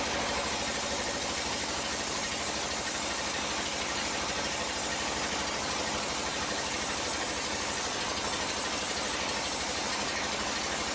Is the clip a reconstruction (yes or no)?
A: no